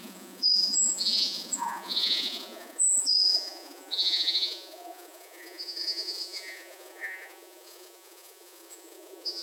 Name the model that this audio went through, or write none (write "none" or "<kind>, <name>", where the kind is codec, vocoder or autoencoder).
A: vocoder, Vocos